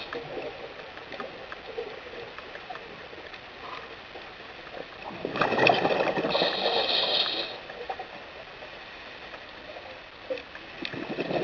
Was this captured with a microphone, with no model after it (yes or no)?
yes